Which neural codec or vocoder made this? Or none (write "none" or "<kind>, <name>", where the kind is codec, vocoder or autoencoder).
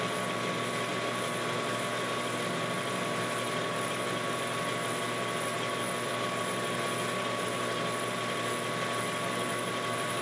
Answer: none